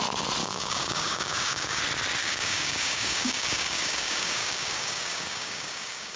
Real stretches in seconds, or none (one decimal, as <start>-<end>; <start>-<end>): 0.0-0.4; 1.8-2.2